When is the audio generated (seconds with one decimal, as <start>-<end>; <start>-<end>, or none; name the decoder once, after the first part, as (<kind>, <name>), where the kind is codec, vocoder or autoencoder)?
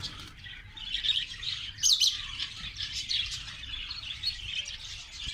1.1-4.3 (vocoder, BigVGAN v2)